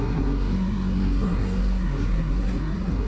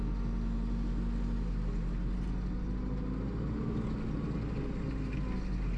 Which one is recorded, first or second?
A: second